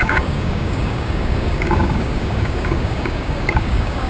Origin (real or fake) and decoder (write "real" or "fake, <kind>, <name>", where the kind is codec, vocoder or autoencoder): fake, codec, DAC